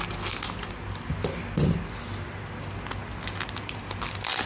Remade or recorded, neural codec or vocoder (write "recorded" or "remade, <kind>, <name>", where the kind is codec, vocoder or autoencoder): recorded